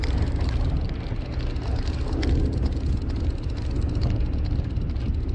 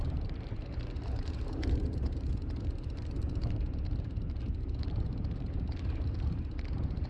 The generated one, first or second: second